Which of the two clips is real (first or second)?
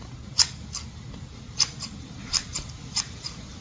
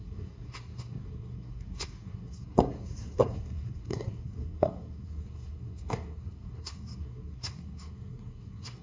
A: first